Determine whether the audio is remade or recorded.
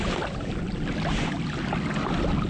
recorded